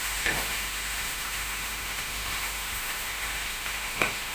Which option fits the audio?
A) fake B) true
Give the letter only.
A